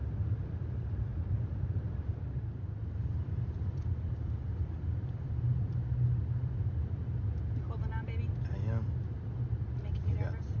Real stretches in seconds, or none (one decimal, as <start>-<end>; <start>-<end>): 0.0-1.1; 5.8-10.6